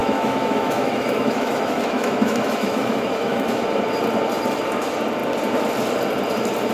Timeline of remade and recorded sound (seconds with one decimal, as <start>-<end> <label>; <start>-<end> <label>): 0.0-3.6 remade; 3.6-6.7 recorded